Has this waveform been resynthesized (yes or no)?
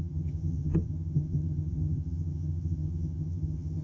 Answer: yes